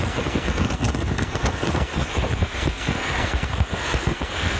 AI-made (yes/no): yes